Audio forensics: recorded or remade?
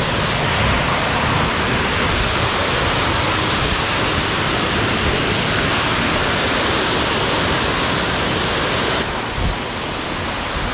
recorded